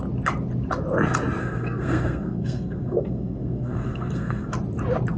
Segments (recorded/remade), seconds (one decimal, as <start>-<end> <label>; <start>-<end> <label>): 0.0-1.4 recorded; 1.4-4.5 remade; 4.5-5.2 recorded